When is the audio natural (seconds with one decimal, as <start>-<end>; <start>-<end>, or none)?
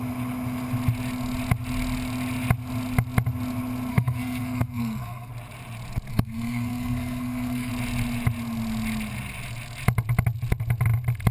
0.0-3.9; 5.3-6.1; 7.7-11.3